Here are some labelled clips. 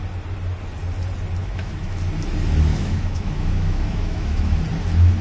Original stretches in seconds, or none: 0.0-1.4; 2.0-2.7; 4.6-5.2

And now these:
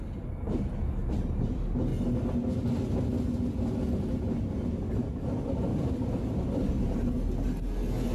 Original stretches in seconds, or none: 0.0-8.1

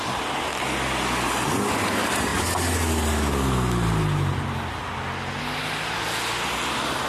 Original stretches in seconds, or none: 0.0-7.1

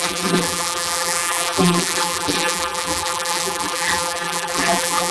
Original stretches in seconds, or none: none

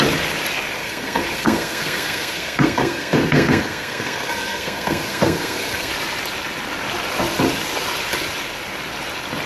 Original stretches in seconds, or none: 0.0-0.8; 5.9-9.5

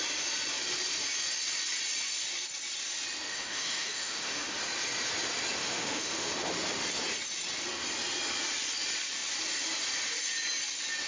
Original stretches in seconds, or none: 0.0-3.3; 4.6-5.6; 6.3-11.1

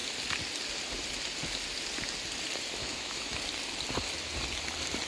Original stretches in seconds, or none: 0.0-2.8; 3.4-5.1